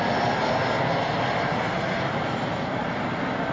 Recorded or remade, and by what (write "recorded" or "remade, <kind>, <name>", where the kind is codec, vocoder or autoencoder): recorded